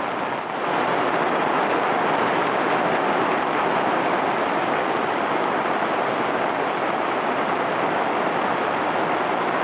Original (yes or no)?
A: yes